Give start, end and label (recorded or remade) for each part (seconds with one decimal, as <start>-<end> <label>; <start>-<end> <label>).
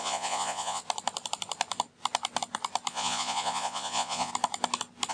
0.0-0.8 remade; 0.8-2.9 recorded; 2.9-4.3 remade; 4.3-5.1 recorded